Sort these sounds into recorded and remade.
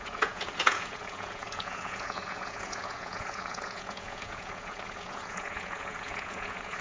remade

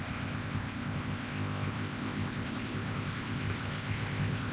remade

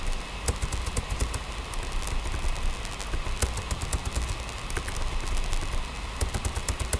recorded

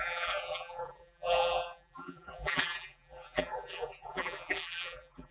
remade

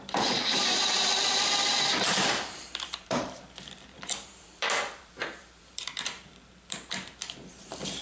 remade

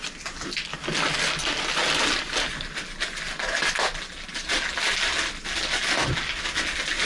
recorded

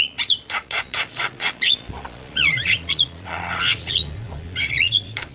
remade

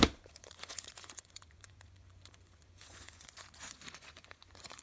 remade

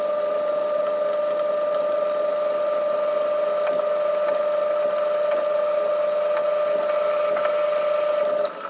recorded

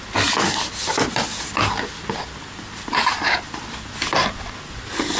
recorded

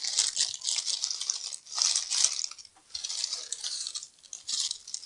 recorded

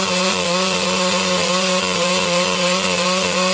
remade